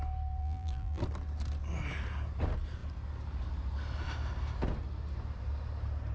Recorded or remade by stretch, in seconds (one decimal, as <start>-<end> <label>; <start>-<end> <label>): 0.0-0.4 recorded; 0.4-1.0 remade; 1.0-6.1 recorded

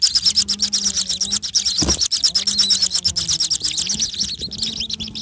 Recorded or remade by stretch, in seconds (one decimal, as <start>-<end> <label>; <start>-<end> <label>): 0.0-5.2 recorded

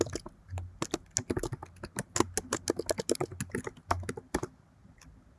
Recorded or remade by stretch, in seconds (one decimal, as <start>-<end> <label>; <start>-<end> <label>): 0.0-5.4 recorded